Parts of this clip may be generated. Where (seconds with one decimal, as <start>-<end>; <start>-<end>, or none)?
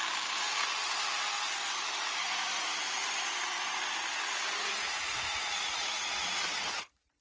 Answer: 4.6-7.2